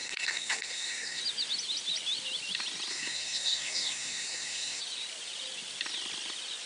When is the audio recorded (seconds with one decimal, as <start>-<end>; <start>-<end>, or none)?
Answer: 1.2-2.9; 4.8-6.7